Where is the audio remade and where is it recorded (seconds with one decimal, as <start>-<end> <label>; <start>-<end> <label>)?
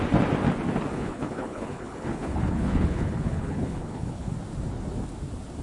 0.0-0.9 recorded; 0.9-4.3 remade; 4.3-5.6 recorded